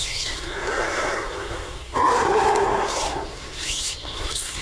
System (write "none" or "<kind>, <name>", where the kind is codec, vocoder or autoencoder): codec, SNAC